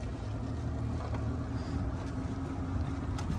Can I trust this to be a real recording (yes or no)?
yes